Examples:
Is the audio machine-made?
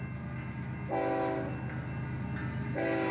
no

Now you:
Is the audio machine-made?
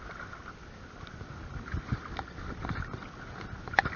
no